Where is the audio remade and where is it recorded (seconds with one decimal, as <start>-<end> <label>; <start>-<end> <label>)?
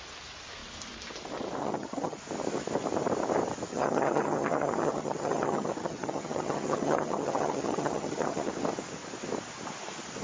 0.0-1.6 recorded; 1.6-2.2 remade; 2.2-3.7 recorded; 3.7-8.5 remade; 8.5-10.2 recorded